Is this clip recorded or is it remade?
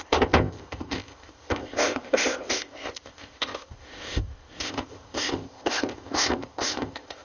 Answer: remade